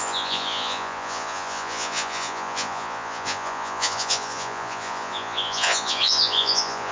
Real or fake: fake